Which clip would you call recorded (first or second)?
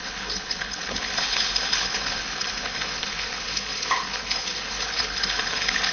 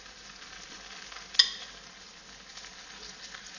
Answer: second